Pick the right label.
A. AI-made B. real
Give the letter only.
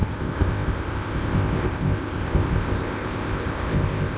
A